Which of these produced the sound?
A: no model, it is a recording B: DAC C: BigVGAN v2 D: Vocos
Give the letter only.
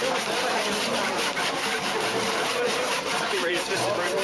C